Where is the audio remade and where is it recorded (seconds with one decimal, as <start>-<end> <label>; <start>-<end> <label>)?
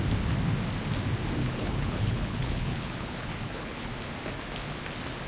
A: 0.0-1.4 recorded; 1.4-3.9 remade; 3.9-5.3 recorded